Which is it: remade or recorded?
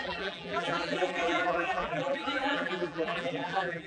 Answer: remade